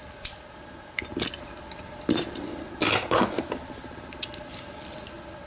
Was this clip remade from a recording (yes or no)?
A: no